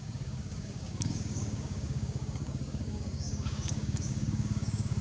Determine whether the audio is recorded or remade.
remade